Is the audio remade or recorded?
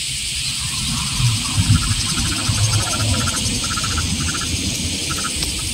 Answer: recorded